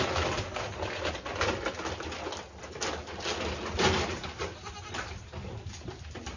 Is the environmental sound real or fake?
real